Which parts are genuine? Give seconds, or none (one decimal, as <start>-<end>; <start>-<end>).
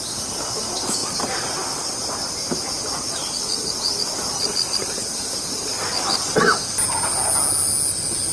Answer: 0.0-1.0; 2.6-4.8; 5.7-8.3